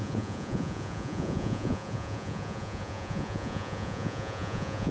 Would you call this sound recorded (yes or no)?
no